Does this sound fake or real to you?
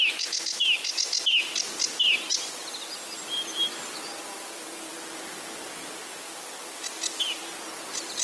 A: real